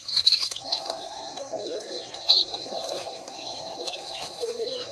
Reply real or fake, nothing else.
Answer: fake